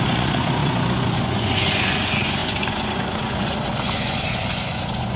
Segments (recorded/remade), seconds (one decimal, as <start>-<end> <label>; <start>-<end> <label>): 0.0-5.2 remade